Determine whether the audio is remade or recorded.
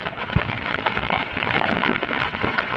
remade